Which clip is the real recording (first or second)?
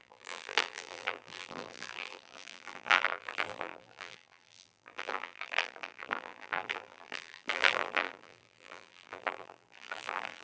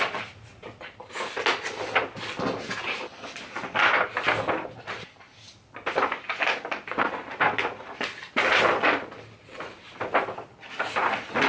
second